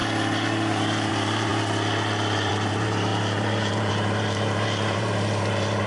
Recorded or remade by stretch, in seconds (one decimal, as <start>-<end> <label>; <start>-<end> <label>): 0.0-1.1 recorded; 1.1-1.5 remade; 1.5-2.5 recorded; 2.5-5.9 remade